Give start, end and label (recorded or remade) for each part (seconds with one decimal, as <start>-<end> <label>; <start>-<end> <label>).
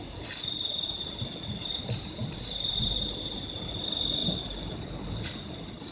0.0-1.7 recorded; 1.7-3.4 remade; 3.4-5.9 recorded